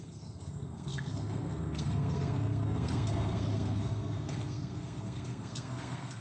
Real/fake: fake